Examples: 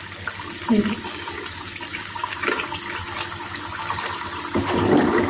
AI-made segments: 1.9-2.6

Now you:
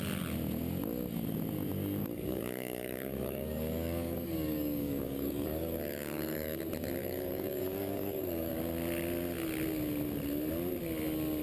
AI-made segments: 2.0-6.6; 7.0-8.5

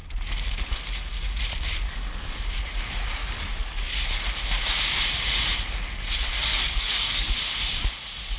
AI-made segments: 3.2-4.0; 6.5-7.4

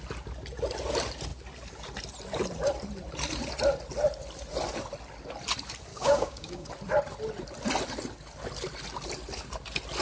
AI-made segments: 5.9-6.7

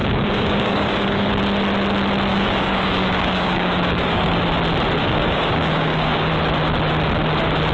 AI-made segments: 0.0-1.3; 2.3-4.4; 5.0-6.3